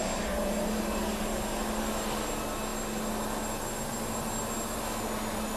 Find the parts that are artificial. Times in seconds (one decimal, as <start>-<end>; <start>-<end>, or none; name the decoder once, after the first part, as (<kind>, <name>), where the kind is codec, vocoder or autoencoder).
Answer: none